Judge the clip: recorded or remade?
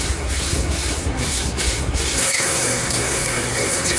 remade